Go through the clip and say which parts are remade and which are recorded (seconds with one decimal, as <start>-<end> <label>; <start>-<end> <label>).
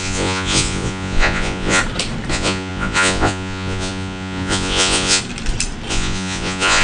0.0-1.8 remade; 1.8-2.3 recorded; 2.3-5.2 remade; 5.2-5.9 recorded; 5.9-6.8 remade